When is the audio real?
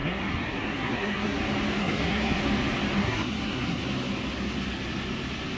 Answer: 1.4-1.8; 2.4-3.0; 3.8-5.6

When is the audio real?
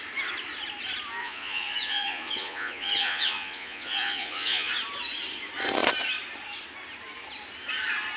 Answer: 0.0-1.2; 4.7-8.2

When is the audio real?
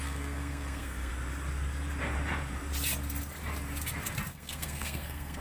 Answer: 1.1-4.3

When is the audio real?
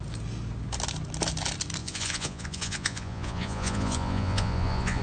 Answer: 0.0-1.8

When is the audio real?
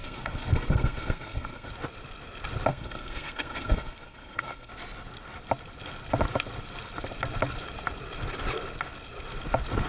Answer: 1.7-2.7; 4.7-9.9